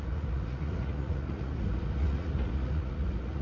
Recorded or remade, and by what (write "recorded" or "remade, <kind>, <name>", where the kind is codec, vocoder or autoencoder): remade, vocoder, Vocos